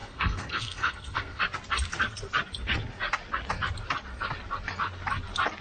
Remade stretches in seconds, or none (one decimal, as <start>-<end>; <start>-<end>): 0.0-1.4